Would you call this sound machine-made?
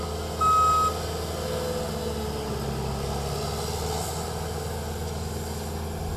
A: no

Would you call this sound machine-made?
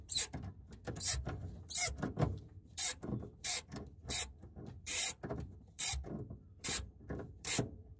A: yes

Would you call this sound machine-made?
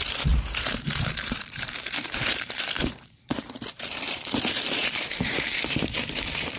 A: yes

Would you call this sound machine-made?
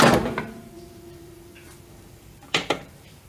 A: yes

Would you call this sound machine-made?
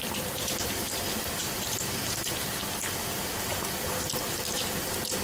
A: yes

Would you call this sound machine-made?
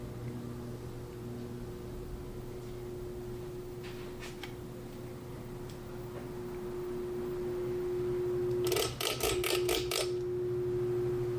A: no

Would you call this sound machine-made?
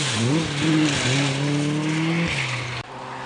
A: no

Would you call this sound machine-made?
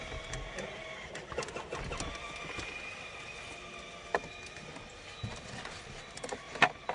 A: no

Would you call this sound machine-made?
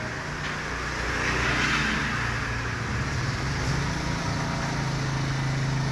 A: no